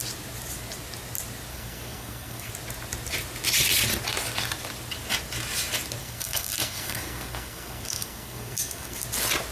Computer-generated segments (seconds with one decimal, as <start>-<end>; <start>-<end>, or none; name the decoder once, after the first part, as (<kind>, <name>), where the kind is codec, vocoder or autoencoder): 1.5-2.5 (codec, SNAC); 6.0-9.0